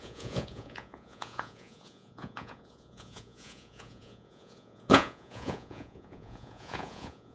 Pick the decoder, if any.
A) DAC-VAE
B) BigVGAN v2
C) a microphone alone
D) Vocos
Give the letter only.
D